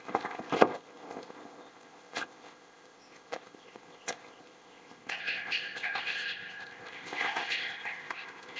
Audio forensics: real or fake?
fake